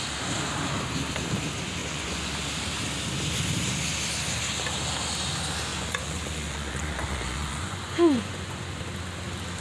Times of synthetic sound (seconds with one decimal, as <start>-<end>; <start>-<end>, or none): 1.8-2.3; 5.7-8.8